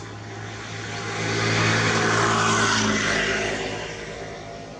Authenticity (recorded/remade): recorded